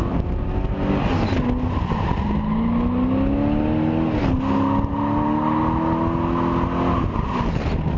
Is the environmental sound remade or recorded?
recorded